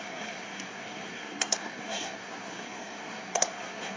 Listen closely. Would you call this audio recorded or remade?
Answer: remade